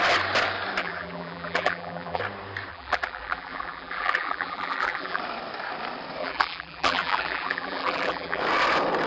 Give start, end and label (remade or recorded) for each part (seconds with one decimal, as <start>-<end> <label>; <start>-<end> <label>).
0.0-0.8 recorded; 0.8-2.2 remade; 2.2-2.7 recorded; 2.7-5.2 remade; 5.2-6.2 recorded; 6.2-8.4 remade; 8.4-9.1 recorded